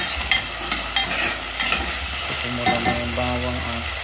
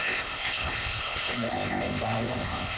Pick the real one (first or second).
first